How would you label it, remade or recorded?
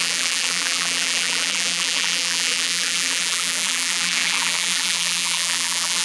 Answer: remade